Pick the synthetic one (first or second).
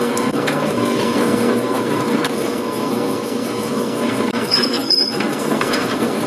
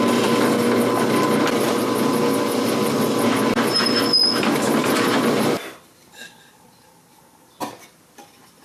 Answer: first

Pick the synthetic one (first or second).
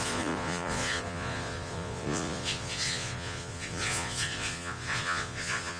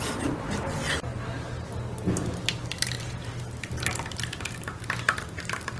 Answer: first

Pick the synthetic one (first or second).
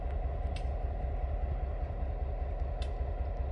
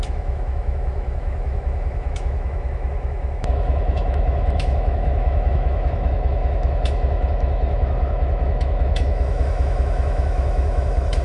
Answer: second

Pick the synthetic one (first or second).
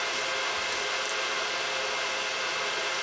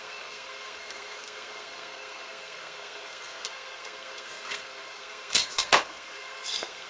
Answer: second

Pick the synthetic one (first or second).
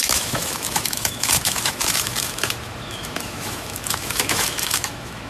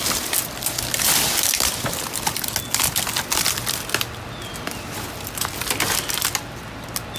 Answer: first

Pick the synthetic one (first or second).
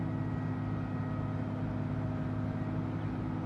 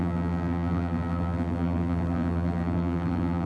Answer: second